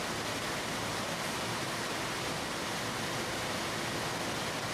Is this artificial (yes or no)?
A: no